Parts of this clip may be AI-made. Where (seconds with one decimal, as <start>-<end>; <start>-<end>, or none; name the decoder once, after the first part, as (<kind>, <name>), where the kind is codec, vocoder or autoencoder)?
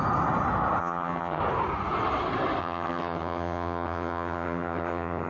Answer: 0.8-1.4 (vocoder, HiFi-GAN); 2.6-5.3